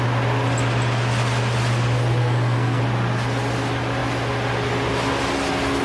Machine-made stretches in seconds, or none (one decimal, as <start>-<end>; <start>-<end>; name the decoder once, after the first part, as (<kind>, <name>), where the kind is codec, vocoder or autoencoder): 2.2-2.8 (codec, SNAC)